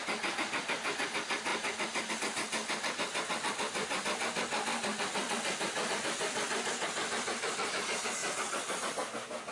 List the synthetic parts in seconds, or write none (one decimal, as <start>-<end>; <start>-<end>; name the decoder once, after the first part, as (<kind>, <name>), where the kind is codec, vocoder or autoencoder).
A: none